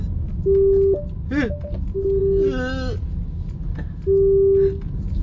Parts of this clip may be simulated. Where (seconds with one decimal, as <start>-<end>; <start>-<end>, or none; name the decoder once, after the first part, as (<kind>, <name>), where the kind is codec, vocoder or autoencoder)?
none